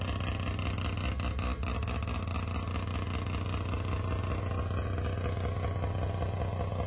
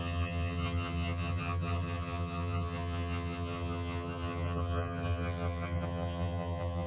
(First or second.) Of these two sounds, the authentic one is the first